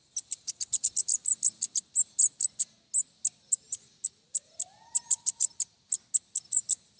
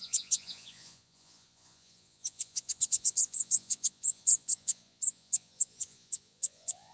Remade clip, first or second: second